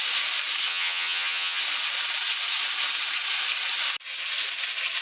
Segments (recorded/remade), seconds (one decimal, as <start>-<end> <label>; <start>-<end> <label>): 0.0-0.7 recorded; 0.7-1.6 remade; 1.6-5.0 recorded